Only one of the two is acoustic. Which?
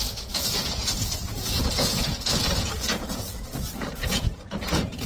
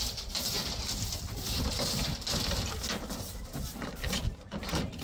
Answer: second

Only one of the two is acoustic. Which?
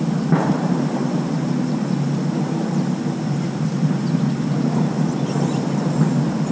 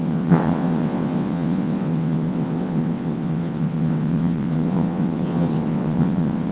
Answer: first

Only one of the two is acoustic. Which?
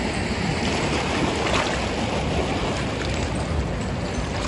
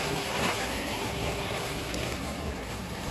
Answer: first